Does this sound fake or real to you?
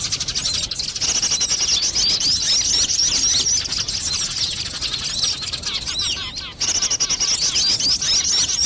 real